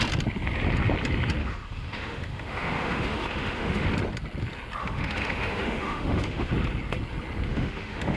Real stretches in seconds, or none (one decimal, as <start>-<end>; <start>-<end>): 0.0-1.4; 3.9-4.8; 6.5-7.5